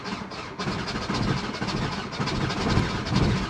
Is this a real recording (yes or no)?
yes